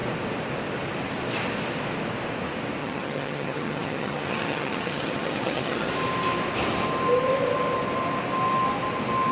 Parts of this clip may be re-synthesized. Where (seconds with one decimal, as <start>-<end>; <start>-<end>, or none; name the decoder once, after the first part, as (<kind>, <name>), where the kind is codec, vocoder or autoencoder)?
2.8-5.9 (vocoder, HiFi-GAN)